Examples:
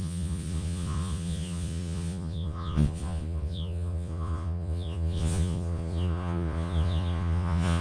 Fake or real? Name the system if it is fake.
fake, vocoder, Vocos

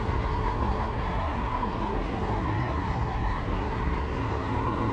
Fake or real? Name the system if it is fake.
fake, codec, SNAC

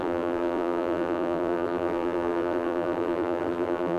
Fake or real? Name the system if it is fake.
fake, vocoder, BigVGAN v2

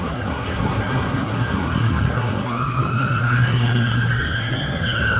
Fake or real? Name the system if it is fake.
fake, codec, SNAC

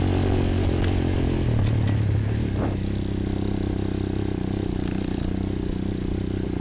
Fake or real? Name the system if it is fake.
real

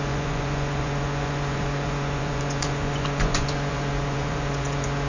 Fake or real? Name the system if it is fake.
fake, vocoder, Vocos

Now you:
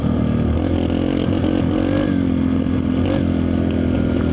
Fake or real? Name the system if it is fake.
real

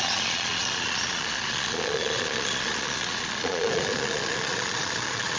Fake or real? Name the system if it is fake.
fake, vocoder, Vocos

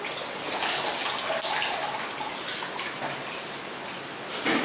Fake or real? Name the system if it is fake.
real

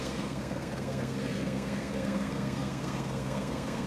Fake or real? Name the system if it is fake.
fake, codec, SNAC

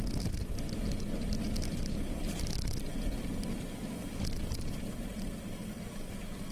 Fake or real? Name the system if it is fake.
real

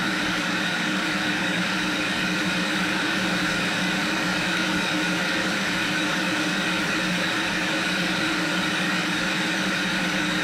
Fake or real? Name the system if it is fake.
fake, codec, DAC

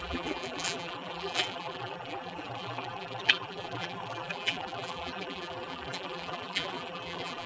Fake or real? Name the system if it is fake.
fake, vocoder, BigVGAN v2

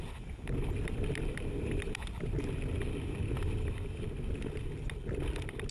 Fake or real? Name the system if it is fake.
real